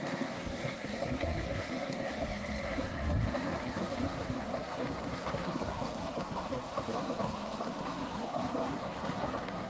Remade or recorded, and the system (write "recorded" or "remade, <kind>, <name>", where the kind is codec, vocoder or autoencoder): remade, codec, SNAC